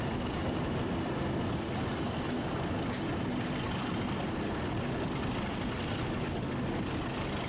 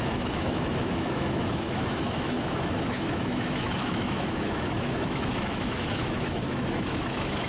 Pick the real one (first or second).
first